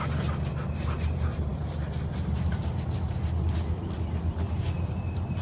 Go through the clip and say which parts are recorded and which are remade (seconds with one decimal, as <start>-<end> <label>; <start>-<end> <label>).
0.0-5.4 recorded